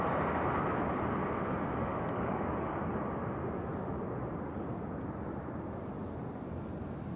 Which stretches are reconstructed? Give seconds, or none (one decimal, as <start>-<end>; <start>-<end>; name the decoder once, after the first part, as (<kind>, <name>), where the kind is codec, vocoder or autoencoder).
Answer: 1.9-2.9 (codec, DAC)